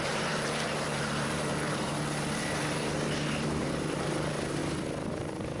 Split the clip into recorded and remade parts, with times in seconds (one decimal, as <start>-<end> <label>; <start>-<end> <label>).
0.0-1.9 remade; 1.9-3.6 recorded; 3.6-4.6 remade; 4.6-5.6 recorded